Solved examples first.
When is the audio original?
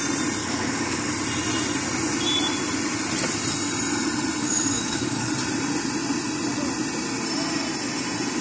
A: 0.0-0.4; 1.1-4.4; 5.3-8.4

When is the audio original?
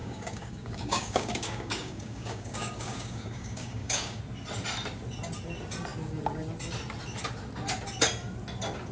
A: 4.2-8.9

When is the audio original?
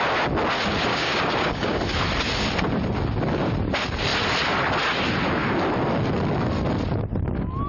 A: 0.0-0.9; 1.8-7.7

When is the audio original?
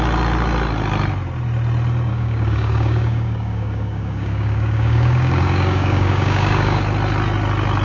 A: 0.0-2.1; 6.8-7.8